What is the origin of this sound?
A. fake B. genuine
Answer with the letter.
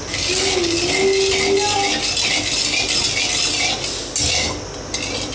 B